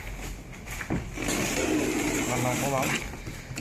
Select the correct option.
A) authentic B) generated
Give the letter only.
A